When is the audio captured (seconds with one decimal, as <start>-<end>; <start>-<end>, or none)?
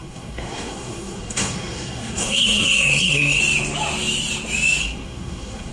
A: 3.4-4.8